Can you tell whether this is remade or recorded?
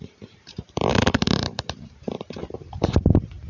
remade